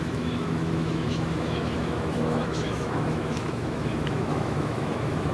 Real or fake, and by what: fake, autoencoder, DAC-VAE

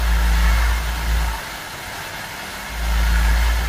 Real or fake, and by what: real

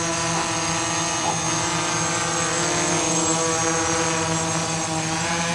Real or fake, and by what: real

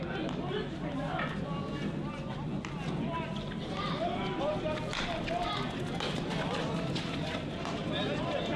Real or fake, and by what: real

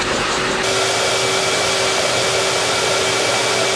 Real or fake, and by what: real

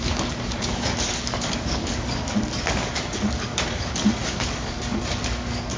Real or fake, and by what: fake, codec, DAC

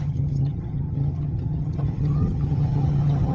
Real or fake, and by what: fake, vocoder, HiFi-GAN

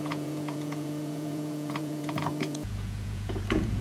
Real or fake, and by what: fake, vocoder, Vocos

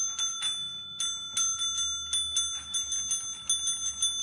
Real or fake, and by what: real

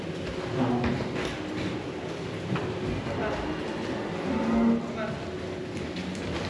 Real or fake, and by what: real